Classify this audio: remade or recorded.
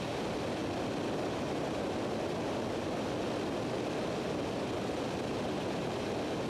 recorded